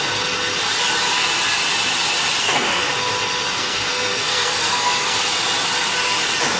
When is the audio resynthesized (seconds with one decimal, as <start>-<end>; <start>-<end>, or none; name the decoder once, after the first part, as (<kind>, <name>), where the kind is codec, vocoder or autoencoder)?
2.4-2.9 (codec, SNAC); 3.6-5.2